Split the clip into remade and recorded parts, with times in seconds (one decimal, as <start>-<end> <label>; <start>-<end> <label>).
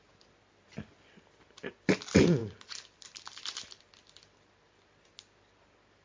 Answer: 0.0-6.0 recorded